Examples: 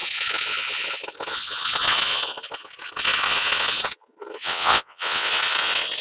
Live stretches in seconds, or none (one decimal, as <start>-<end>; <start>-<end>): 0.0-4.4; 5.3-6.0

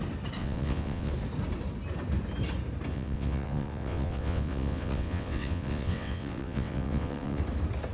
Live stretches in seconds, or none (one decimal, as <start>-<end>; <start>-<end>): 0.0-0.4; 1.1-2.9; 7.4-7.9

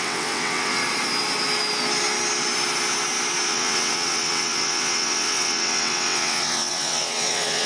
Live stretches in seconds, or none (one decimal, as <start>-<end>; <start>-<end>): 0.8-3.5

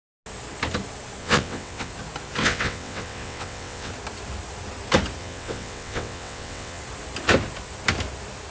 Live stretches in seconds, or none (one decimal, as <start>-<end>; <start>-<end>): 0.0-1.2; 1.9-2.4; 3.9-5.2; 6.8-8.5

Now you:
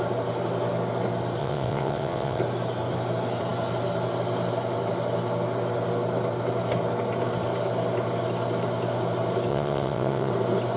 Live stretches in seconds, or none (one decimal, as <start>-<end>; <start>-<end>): 0.0-1.4; 2.4-9.5; 10.3-10.8

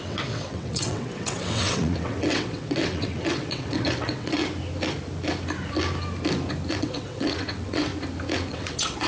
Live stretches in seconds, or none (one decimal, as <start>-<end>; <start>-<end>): 4.4-6.7; 7.9-8.5